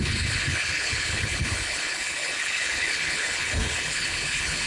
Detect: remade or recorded remade